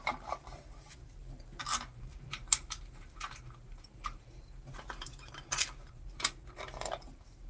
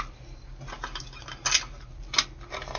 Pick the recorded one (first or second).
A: second